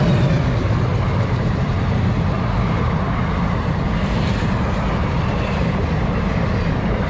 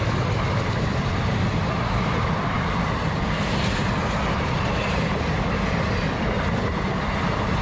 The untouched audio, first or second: first